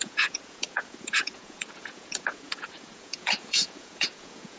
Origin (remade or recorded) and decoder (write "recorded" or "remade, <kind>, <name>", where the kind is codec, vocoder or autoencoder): remade, vocoder, Vocos